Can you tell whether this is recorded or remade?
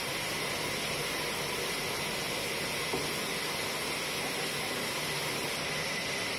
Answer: recorded